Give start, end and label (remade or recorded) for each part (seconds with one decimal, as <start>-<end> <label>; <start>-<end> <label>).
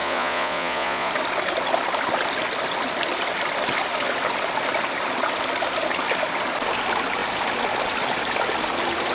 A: 0.0-1.1 remade; 1.1-9.1 recorded